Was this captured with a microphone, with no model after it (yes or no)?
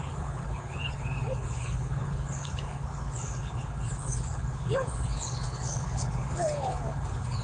no